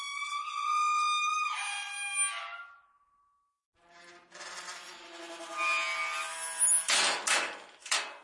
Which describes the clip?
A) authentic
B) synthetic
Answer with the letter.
A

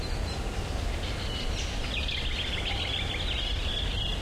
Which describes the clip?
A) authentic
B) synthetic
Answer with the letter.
A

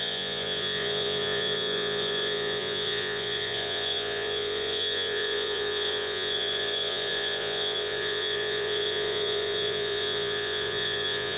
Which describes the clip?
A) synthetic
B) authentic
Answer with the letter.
A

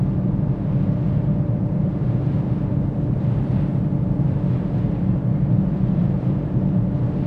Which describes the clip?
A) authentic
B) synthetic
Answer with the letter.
B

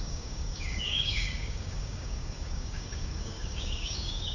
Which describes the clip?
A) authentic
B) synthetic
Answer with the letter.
B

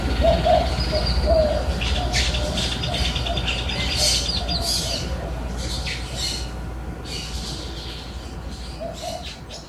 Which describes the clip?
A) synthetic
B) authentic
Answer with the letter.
B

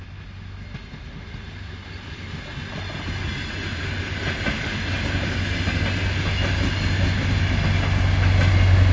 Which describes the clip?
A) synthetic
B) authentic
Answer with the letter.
B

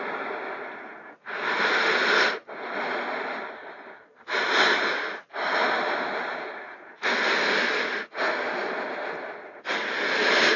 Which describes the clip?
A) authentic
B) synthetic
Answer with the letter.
A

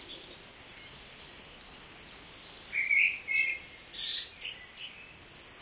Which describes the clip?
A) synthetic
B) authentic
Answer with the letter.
B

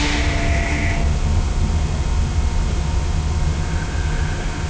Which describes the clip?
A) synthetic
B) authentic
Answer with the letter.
B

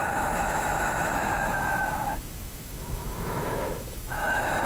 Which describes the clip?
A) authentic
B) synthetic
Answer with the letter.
B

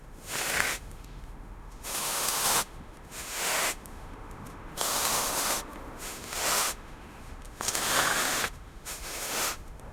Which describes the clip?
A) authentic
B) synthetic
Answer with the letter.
B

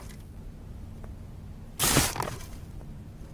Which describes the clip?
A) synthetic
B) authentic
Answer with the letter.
B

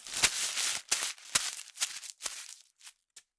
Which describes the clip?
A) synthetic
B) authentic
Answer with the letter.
B